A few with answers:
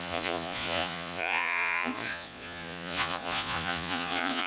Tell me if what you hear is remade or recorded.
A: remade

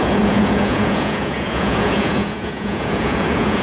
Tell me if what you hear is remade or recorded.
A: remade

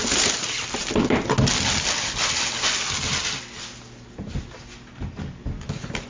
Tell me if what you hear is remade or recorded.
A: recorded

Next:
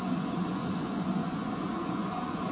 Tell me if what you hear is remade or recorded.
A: remade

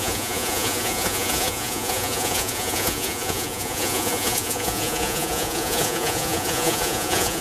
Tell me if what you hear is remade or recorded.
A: remade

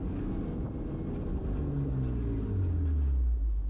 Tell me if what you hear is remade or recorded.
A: recorded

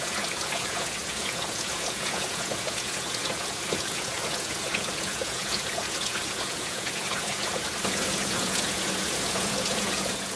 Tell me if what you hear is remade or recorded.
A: remade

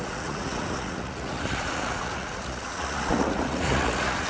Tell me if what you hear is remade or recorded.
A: remade